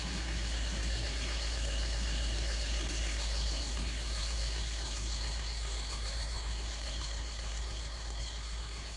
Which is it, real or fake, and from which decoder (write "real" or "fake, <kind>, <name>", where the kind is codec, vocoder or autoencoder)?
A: fake, codec, SNAC